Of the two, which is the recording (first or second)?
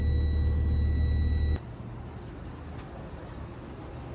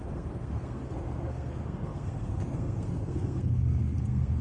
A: first